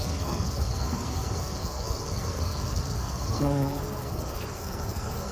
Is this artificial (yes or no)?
yes